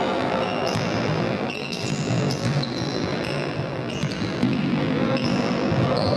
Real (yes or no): no